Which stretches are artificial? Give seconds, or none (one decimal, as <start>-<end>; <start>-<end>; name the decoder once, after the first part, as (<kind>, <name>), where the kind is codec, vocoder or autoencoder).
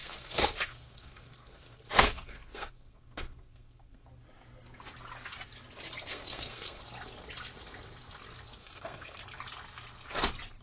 0.0-4.1 (codec, SNAC); 6.1-6.8; 8.6-9.2